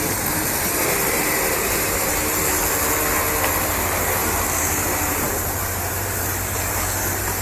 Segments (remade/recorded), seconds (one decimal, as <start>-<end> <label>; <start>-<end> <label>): 0.0-2.6 remade; 2.6-3.6 recorded; 3.6-7.4 remade